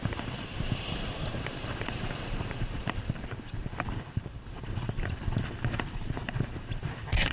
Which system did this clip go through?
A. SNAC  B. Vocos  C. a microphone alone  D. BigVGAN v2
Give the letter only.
D